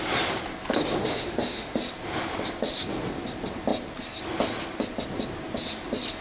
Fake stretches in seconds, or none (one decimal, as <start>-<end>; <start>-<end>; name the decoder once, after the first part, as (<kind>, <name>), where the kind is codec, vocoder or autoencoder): 1.0-1.8 (autoencoder, DAC-VAE)